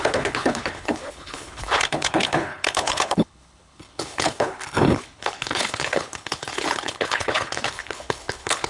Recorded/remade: remade